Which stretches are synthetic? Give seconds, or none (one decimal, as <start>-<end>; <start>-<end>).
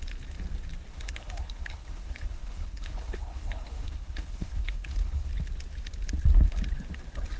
0.9-5.3